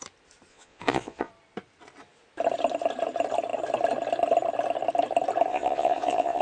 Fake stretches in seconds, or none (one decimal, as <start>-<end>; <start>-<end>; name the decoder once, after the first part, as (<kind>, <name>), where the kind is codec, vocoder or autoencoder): 0.5-1.3 (vocoder, Vocos); 5.5-6.4